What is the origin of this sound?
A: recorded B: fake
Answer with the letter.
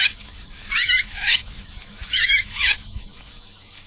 B